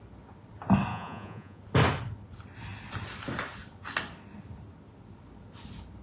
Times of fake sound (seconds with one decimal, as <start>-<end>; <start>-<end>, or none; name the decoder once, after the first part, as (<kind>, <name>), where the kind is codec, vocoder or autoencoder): 0.9-1.6 (vocoder, Vocos)